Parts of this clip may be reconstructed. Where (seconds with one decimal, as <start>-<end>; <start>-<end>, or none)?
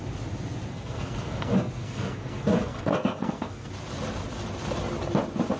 0.7-3.7